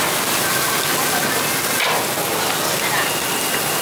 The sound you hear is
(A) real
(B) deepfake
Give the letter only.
A